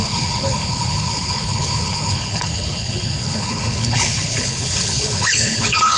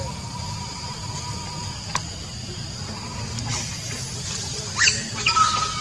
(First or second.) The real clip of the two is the second